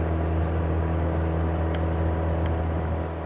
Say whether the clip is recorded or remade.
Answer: recorded